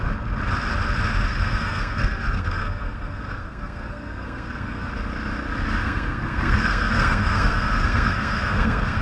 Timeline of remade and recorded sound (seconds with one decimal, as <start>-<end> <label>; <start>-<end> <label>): 0.0-1.3 recorded; 1.3-4.9 remade; 4.9-5.8 recorded; 5.8-9.0 remade